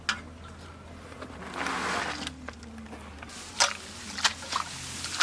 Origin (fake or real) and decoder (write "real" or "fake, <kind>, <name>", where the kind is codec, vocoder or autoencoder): real